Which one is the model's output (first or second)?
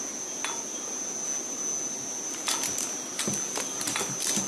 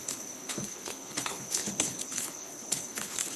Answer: second